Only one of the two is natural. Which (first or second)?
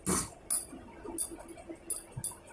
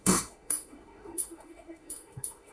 first